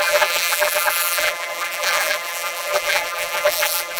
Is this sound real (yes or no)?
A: no